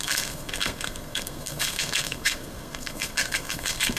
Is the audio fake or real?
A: fake